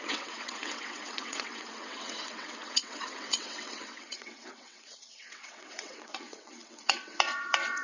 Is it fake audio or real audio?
fake